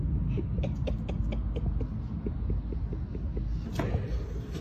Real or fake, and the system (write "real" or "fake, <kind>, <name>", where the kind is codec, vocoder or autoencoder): real